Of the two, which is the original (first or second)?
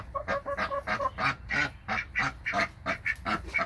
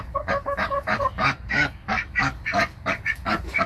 first